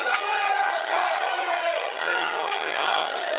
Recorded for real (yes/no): no